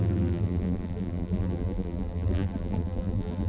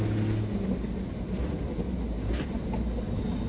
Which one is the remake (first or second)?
first